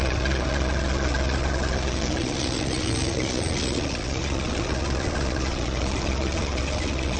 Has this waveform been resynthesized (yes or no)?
yes